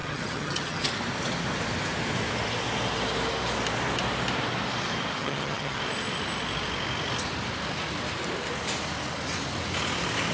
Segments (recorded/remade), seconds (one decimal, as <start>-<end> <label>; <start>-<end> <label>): 0.0-0.9 remade; 0.9-5.2 recorded; 5.2-5.8 remade; 5.8-10.3 recorded